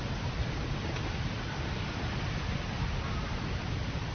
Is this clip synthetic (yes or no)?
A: no